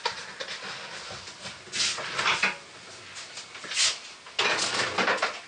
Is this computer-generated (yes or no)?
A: no